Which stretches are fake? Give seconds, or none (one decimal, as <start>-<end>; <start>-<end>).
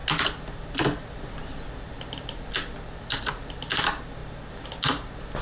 none